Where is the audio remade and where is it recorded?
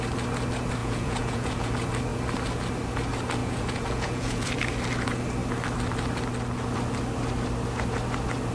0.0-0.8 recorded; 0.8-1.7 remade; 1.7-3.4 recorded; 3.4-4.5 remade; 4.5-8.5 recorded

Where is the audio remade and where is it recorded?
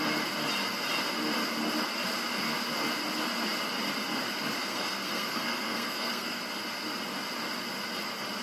0.0-4.6 recorded; 4.6-6.4 remade; 6.4-8.4 recorded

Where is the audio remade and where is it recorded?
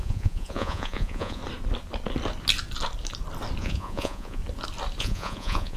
0.0-1.4 remade; 1.4-3.6 recorded; 3.6-4.4 remade; 4.4-5.0 recorded; 5.0-5.8 remade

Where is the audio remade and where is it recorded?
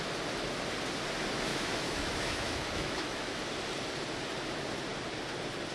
0.0-1.5 recorded; 1.5-3.4 remade; 3.4-5.7 recorded